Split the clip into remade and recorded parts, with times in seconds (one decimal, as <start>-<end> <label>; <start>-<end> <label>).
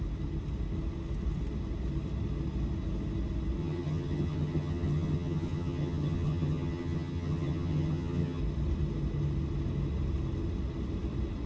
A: 0.0-3.6 recorded; 3.6-8.4 remade; 8.4-11.5 recorded